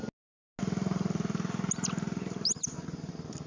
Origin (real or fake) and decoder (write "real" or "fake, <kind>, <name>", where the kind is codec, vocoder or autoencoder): real